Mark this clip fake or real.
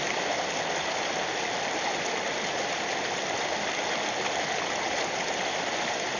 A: real